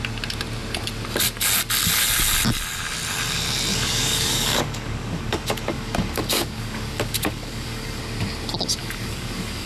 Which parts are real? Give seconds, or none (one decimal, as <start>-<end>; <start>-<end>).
0.0-3.7; 8.0-8.8